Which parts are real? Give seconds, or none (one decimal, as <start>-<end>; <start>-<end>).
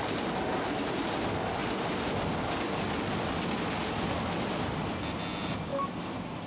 0.0-6.5